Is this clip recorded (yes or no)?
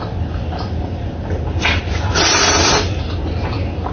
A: yes